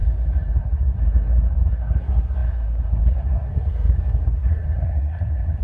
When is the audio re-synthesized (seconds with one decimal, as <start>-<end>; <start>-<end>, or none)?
0.5-5.6